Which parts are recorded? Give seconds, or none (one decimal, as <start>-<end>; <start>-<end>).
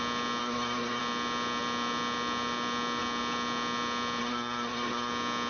0.0-0.4; 1.0-4.2; 5.1-5.5